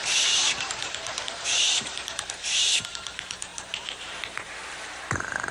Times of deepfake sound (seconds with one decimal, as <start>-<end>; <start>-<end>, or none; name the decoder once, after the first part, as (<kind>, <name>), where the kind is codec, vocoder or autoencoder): 0.0-5.5 (vocoder, BigVGAN v2)